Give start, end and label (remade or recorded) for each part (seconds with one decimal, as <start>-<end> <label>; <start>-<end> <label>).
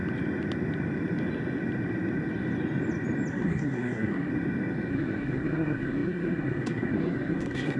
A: 0.0-3.3 recorded; 3.3-4.3 remade; 4.3-4.9 recorded; 4.9-7.8 remade